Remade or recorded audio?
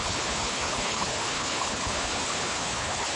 remade